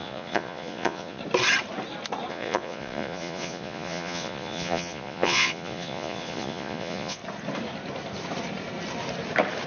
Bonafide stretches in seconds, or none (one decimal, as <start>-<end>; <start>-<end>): 1.2-2.3; 7.2-9.7